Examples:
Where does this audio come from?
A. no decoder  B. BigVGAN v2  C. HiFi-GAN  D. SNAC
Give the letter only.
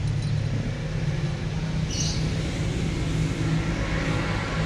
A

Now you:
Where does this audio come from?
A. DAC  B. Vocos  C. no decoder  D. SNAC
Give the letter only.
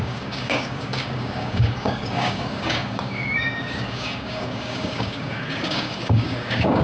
A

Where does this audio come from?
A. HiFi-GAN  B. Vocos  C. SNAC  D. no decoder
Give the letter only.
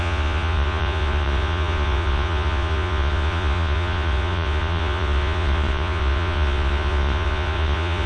B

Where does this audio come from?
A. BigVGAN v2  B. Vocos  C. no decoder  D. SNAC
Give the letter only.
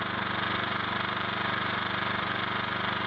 A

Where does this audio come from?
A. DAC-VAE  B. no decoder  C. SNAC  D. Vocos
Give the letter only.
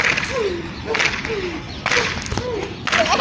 B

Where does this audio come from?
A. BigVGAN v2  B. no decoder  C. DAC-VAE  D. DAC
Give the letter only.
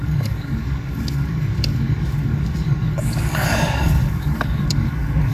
D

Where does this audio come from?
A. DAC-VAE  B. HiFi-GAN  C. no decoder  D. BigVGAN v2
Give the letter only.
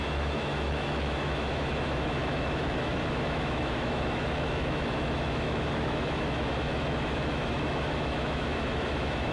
A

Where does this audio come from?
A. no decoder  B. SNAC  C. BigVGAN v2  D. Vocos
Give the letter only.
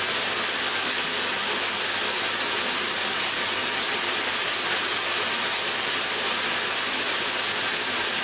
A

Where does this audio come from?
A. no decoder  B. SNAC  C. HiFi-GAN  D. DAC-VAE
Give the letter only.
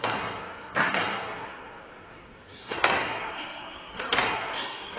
B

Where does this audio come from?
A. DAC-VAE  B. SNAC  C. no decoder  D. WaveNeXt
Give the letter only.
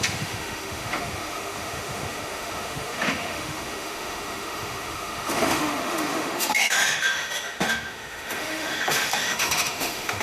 A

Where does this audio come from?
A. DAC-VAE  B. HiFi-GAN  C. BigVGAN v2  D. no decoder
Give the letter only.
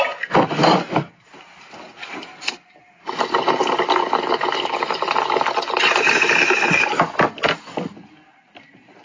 D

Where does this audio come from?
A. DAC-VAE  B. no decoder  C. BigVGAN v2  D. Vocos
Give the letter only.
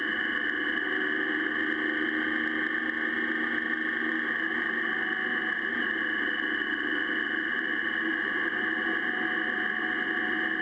B